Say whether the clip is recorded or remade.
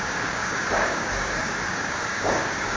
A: remade